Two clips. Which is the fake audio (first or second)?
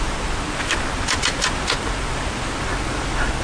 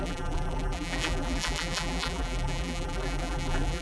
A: second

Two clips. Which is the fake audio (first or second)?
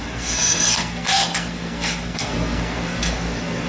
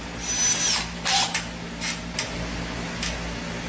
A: first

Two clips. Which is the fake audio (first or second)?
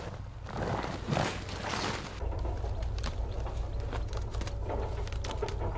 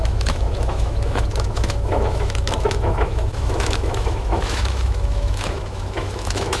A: second